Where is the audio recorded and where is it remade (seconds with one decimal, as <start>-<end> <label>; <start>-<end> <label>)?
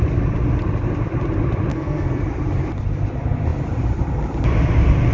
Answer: 0.0-1.7 recorded; 1.7-2.2 remade; 2.2-5.1 recorded